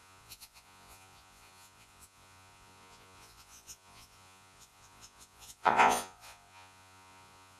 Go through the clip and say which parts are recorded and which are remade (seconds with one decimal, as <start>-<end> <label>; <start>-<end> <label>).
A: 0.0-7.6 remade